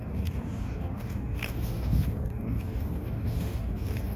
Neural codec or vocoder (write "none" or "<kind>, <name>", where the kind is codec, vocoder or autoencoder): codec, DAC